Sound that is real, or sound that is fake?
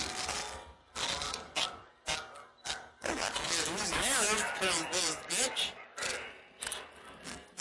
real